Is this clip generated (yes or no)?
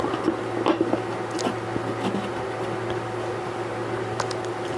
no